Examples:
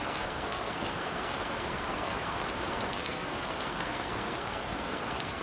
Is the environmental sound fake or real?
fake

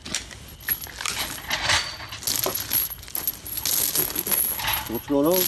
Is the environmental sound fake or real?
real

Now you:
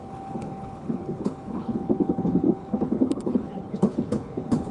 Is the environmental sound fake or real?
fake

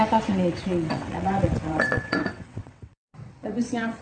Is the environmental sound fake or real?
fake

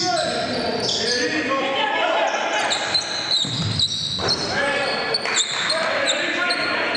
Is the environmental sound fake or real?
real